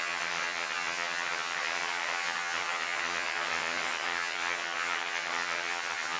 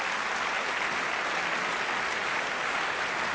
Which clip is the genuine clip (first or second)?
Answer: second